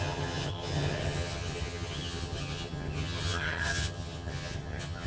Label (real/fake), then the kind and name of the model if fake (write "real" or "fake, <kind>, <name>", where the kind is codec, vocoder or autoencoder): fake, vocoder, HiFi-GAN